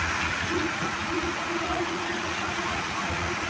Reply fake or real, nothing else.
fake